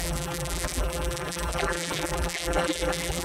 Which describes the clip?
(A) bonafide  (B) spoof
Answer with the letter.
B